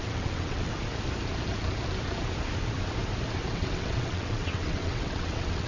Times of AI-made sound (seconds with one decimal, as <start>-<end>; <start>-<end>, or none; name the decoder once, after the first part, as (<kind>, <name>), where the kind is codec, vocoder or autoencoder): 0.0-0.7 (vocoder, WaveNeXt); 3.5-5.7